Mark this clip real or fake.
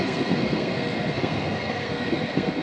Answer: fake